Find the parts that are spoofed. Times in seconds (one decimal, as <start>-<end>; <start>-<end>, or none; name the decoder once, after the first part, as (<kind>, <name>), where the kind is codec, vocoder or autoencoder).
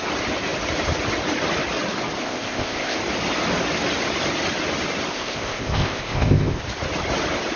2.2-3.0 (codec, ZipCodec); 5.1-6.6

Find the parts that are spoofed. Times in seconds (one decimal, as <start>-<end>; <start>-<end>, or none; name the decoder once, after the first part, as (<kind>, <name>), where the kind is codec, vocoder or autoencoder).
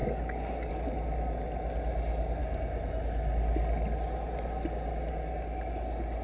0.0-0.7 (codec, DAC)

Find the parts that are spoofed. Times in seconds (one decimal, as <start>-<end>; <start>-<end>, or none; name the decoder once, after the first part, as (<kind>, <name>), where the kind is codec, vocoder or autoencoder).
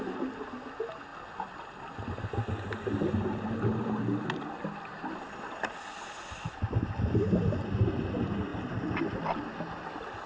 none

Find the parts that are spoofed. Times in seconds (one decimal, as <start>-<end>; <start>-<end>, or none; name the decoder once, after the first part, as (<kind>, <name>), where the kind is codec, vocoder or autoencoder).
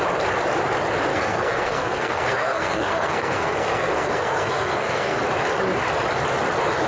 1.1-5.2 (codec, SNAC)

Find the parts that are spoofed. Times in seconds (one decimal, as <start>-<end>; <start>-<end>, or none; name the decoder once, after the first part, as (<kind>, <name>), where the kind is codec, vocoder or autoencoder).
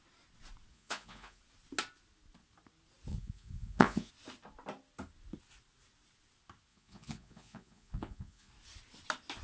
0.7-1.4 (vocoder, Vocos); 3.1-4.1; 6.7-8.5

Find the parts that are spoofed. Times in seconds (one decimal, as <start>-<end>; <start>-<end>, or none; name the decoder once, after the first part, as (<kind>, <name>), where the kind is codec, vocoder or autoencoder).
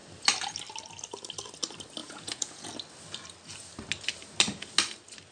2.0-2.7 (vocoder, Vocos)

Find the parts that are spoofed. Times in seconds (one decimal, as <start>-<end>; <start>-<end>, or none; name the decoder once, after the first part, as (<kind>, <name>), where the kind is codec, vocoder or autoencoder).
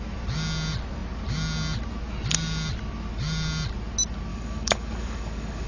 4.3-5.7 (codec, DAC)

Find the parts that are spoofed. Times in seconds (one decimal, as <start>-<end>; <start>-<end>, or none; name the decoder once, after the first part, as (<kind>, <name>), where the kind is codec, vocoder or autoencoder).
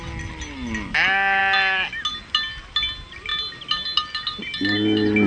none